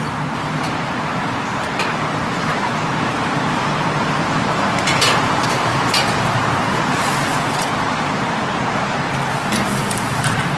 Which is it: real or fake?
fake